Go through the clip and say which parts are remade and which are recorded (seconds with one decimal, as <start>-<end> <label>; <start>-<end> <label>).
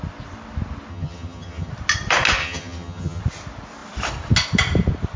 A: 0.0-0.9 recorded; 0.9-1.7 remade; 1.7-2.4 recorded; 2.4-3.2 remade; 3.2-5.2 recorded